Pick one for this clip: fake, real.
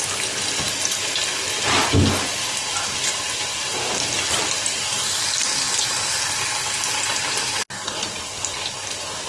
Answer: real